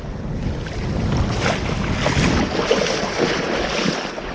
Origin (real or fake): real